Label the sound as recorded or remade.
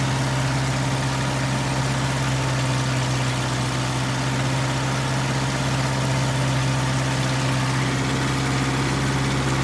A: recorded